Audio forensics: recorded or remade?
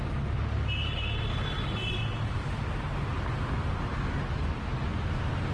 recorded